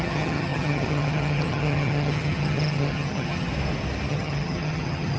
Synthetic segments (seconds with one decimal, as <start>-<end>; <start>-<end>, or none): 0.0-3.5; 4.1-5.2